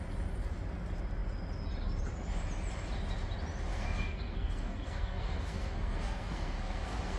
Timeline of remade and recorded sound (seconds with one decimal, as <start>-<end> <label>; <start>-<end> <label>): 0.0-3.7 recorded; 3.7-7.2 remade